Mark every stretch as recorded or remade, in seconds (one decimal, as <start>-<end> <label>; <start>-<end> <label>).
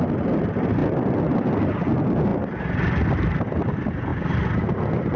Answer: 0.0-5.2 recorded